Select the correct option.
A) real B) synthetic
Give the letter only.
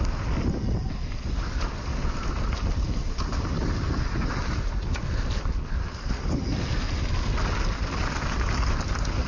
A